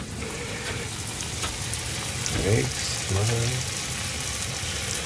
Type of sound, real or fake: real